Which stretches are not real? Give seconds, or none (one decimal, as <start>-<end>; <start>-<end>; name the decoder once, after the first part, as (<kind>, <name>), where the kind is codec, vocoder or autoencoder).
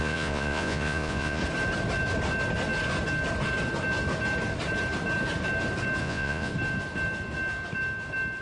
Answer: 0.0-1.4 (vocoder, Vocos); 6.0-6.5